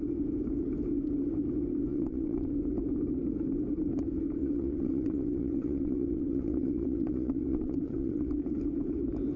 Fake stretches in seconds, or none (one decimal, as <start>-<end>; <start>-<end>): 1.9-2.5; 4.4-8.3